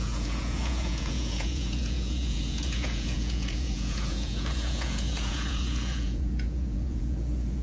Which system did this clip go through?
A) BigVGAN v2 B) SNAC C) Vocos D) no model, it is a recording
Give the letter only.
C